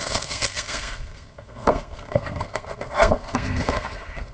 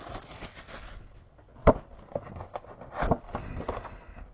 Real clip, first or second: second